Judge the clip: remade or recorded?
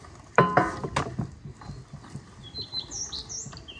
recorded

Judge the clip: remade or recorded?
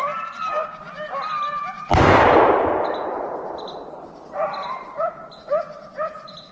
recorded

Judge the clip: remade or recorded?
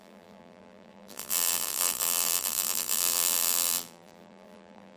remade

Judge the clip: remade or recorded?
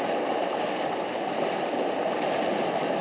recorded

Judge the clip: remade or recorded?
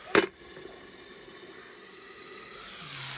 recorded